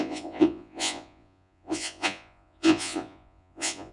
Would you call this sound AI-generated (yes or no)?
yes